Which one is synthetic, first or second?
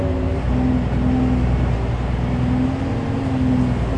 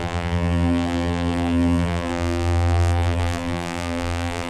second